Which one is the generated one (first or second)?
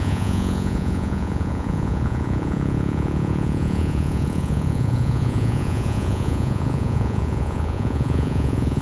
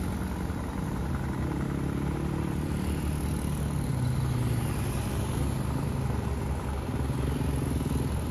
first